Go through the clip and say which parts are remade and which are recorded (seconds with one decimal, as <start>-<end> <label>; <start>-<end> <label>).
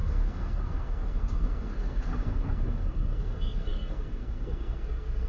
0.0-5.3 remade